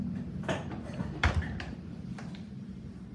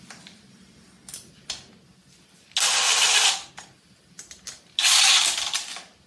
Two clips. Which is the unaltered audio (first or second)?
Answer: second